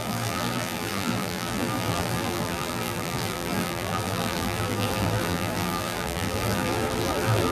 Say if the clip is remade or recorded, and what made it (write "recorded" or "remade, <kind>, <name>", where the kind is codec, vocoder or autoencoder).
remade, vocoder, BigVGAN v2